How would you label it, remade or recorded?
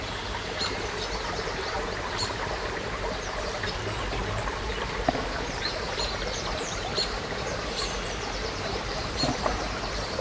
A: remade